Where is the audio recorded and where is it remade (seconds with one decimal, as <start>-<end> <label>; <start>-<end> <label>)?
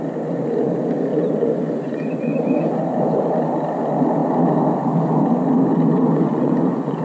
0.0-1.1 recorded; 1.1-2.7 remade; 2.7-5.7 recorded; 5.7-7.0 remade